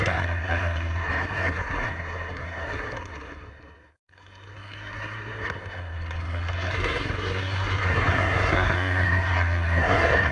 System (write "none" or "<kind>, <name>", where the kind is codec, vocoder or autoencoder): codec, SNAC